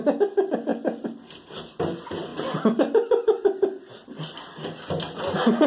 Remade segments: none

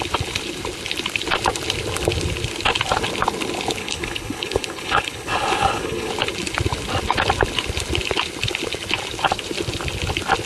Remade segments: 3.8-6.1 (codec, HILCodec)

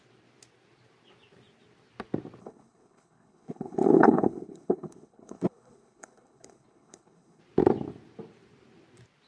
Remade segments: 2.4-7.4 (codec, HILCodec)